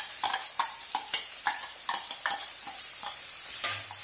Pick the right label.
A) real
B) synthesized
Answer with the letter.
B